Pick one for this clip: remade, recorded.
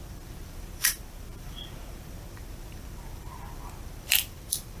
remade